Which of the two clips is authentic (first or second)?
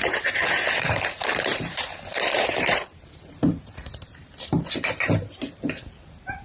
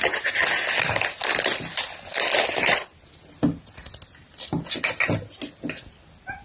second